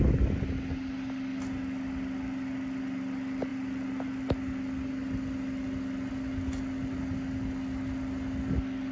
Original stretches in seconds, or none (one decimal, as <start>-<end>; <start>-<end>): 0.0-8.9

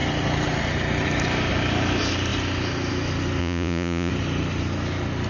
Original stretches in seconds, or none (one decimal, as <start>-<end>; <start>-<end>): 0.0-3.4; 4.1-5.3

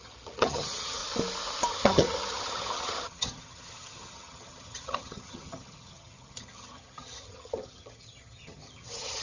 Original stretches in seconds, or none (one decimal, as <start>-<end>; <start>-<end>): 1.0-1.7

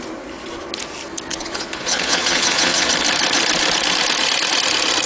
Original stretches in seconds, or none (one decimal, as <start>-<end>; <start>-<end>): 0.0-1.3; 2.9-5.1